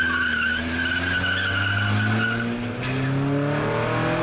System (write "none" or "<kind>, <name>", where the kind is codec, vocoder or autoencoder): none